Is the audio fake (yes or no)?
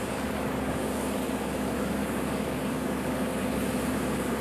yes